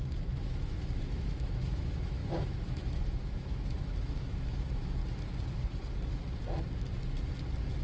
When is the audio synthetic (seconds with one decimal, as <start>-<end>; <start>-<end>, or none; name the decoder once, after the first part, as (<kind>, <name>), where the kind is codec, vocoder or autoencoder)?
0.0-5.0 (autoencoder, DAC-VAE)